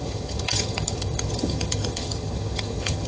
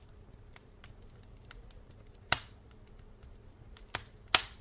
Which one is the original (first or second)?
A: second